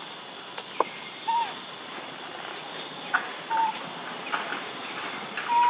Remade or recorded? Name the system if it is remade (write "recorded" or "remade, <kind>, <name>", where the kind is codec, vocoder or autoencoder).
recorded